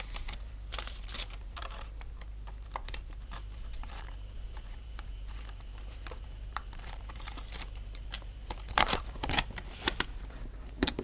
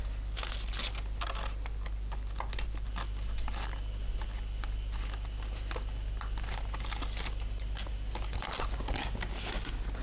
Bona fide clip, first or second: second